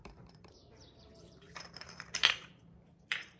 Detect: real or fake fake